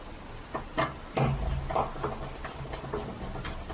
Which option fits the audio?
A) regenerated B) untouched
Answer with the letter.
B